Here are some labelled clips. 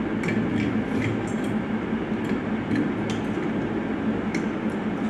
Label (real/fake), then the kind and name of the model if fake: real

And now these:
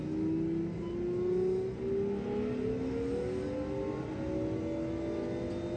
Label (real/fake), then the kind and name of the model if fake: real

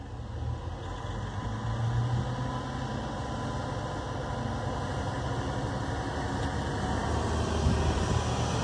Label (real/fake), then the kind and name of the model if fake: real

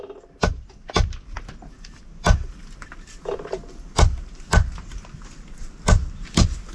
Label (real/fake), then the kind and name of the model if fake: real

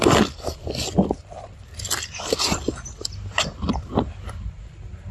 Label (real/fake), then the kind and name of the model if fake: real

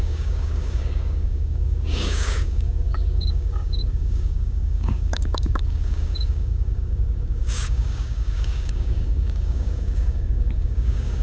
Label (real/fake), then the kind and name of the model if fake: fake, codec, DAC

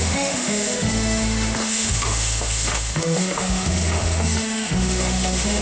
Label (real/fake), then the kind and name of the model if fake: fake, autoencoder, DAC-VAE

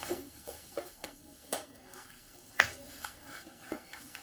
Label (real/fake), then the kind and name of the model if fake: fake, codec, SNAC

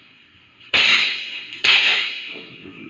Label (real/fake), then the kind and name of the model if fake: fake, codec, SNAC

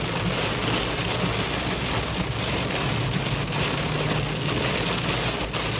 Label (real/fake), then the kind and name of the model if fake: real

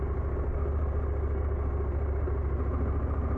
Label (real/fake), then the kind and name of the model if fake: real